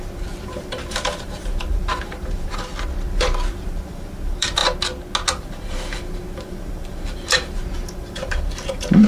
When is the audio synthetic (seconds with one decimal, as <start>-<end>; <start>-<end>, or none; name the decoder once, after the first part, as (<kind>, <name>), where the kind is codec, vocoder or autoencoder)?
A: 0.0-2.7 (vocoder, BigVGAN v2); 3.5-4.6; 5.3-9.1